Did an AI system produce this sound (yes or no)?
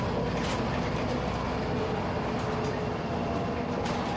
no